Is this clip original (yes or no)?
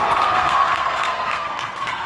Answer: no